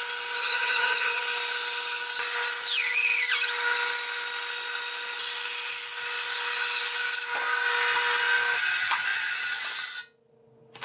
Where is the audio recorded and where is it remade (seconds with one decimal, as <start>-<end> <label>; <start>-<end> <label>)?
0.0-0.4 recorded; 0.4-1.2 remade; 1.2-10.8 recorded